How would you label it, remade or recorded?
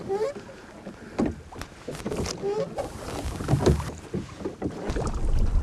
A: recorded